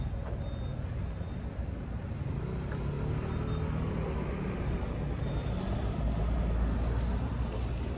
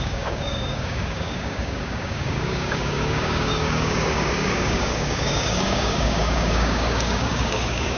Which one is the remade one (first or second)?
second